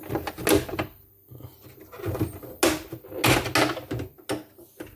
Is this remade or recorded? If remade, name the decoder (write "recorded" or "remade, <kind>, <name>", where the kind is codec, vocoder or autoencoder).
recorded